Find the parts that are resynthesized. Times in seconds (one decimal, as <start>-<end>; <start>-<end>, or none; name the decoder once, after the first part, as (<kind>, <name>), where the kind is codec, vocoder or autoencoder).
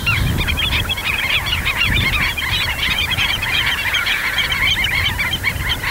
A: 1.0-4.5 (vocoder, Vocos)